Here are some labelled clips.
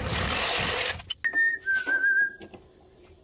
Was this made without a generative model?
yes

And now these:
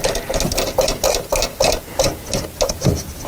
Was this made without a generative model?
yes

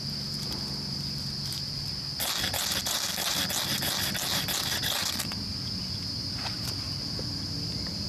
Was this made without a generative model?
yes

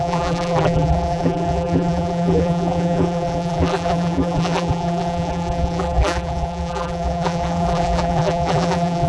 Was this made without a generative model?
no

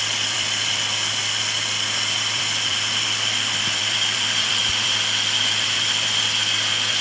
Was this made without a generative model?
no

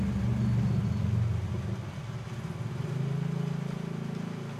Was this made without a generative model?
yes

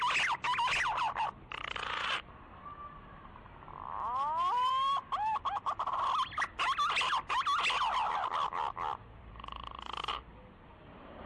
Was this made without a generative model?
yes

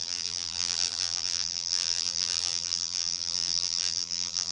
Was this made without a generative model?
no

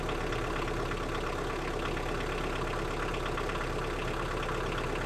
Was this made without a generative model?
yes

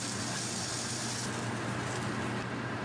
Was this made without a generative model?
yes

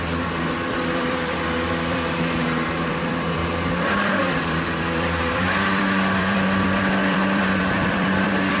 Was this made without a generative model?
no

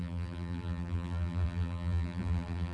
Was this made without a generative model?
no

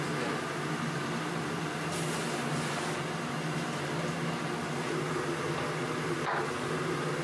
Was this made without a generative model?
yes